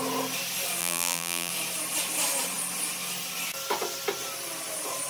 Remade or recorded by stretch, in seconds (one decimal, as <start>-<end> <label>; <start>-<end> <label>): 0.0-0.8 recorded; 0.8-1.5 remade; 1.5-5.1 recorded